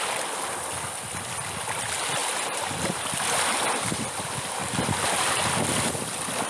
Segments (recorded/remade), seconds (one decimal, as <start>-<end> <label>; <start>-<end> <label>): 0.0-2.2 recorded; 2.2-3.1 remade; 3.1-6.5 recorded

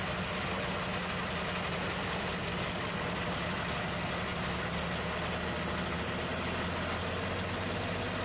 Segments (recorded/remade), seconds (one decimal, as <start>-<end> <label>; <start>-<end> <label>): 0.0-2.5 recorded; 2.5-3.2 remade; 3.2-8.2 recorded

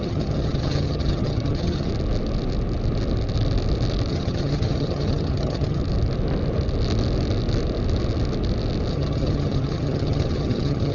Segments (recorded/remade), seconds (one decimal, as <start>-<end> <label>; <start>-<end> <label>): 0.0-1.9 remade; 1.9-4.1 recorded; 4.1-5.8 remade; 5.8-8.9 recorded; 8.9-10.9 remade

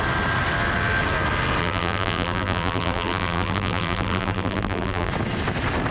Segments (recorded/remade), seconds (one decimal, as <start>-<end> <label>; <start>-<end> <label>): 0.0-1.6 recorded; 1.6-5.1 remade; 5.1-5.9 recorded

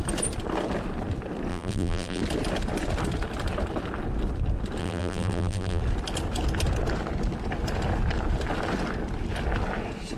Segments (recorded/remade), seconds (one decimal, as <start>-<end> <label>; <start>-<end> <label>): 0.0-1.5 recorded; 1.5-2.2 remade; 2.2-4.8 recorded; 4.8-5.8 remade; 5.8-10.2 recorded

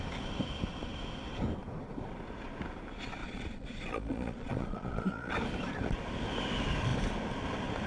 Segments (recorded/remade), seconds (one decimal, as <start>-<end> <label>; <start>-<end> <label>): 0.0-3.2 recorded; 3.2-5.3 remade; 5.3-7.9 recorded

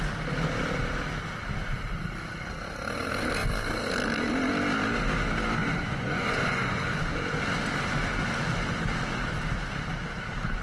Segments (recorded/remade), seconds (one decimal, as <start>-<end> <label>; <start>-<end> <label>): 0.0-5.6 recorded; 5.6-7.0 remade; 7.0-10.6 recorded